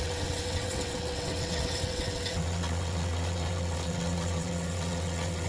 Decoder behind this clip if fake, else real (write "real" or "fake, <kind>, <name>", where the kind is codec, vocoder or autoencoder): fake, vocoder, WaveNeXt